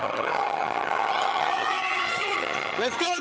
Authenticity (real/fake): fake